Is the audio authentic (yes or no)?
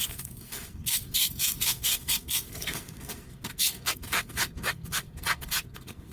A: no